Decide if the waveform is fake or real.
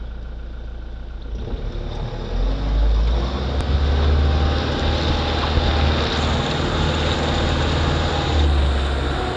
real